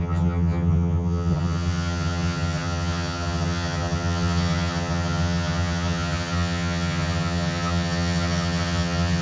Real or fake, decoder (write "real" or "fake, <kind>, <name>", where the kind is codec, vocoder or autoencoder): fake, vocoder, HiFi-GAN